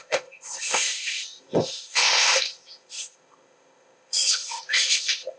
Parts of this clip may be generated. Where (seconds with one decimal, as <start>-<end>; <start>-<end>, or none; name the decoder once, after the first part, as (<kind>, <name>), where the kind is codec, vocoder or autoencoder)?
0.0-5.4 (codec, ZipCodec)